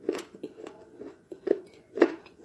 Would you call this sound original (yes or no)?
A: no